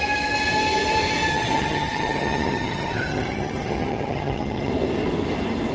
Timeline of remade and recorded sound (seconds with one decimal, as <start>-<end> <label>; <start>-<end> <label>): 0.0-1.3 recorded; 1.3-4.7 remade; 4.7-5.7 recorded